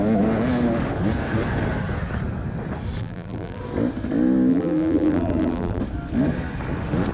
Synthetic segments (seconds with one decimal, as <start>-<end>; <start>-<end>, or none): 3.0-3.6; 4.5-5.8